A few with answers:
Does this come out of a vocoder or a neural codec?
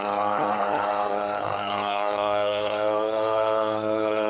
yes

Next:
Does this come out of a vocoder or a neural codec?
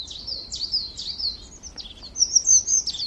no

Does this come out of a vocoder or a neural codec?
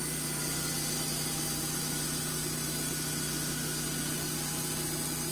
no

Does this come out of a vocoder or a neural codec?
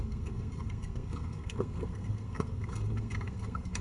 yes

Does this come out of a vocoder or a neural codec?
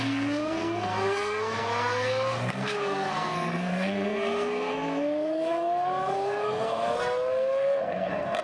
yes